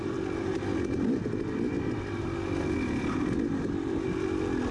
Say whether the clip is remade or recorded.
recorded